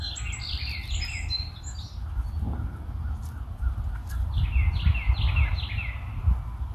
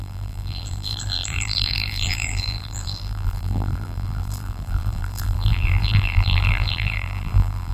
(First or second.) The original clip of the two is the first